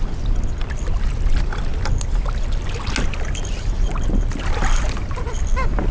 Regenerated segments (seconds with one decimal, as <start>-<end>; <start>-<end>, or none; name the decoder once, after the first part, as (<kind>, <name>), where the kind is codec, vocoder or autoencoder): none